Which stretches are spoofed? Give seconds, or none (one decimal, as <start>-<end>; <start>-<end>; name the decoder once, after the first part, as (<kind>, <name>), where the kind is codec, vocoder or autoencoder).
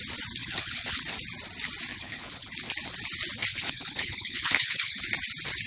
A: 0.4-1.0 (codec, HILCodec); 1.9-2.5; 3.5-5.0